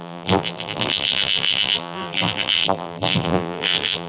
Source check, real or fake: fake